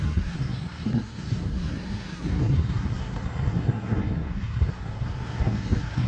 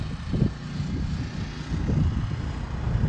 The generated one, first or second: first